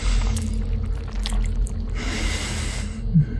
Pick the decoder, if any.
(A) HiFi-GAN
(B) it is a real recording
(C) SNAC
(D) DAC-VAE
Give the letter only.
B